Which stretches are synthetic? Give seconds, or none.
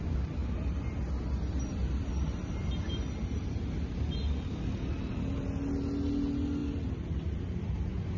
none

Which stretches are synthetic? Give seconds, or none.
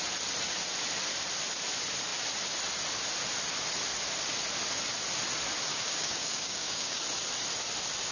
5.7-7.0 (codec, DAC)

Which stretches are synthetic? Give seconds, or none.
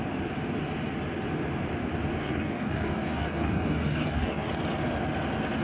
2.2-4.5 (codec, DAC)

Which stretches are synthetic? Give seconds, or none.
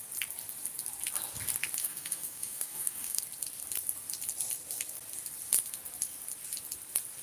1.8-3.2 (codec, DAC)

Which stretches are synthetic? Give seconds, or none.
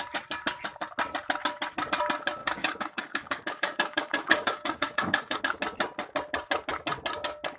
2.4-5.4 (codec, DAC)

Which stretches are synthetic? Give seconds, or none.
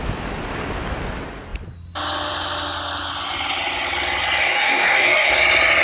4.4-5.3 (codec, DAC)